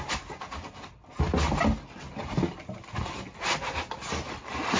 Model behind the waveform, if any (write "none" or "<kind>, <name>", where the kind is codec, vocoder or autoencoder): none